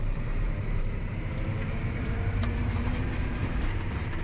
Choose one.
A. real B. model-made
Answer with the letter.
B